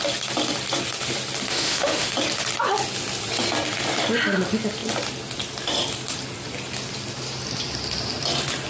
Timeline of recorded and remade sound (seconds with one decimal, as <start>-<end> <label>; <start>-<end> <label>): 0.0-1.5 recorded; 1.5-2.1 remade; 2.1-8.7 recorded